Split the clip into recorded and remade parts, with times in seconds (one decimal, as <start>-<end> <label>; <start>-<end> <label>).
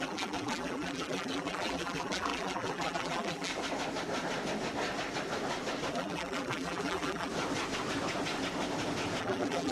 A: 0.0-3.5 remade; 3.5-5.9 recorded; 5.9-7.3 remade; 7.3-9.2 recorded; 9.2-9.7 remade